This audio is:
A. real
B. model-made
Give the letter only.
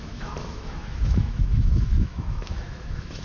B